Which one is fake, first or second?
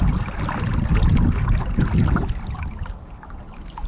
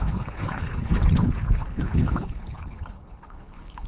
second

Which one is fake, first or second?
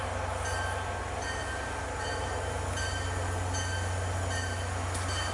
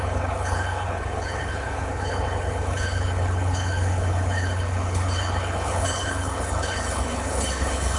second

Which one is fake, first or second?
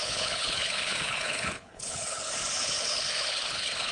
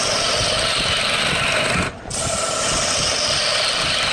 first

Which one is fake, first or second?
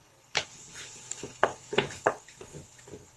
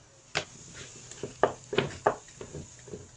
first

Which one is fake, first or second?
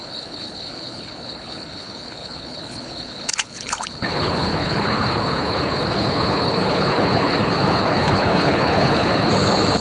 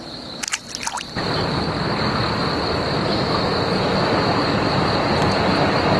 first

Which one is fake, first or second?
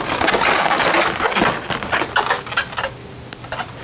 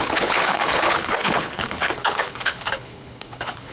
second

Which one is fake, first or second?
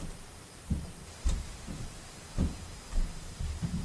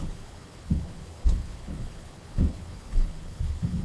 second